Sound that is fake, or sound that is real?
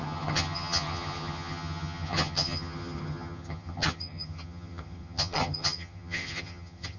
fake